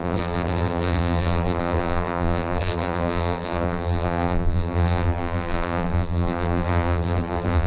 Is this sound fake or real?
fake